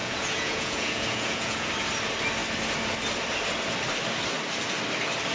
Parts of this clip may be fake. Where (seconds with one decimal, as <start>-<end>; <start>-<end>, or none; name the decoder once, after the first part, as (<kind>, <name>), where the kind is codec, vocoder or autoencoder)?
0.0-1.7 (vocoder, Vocos)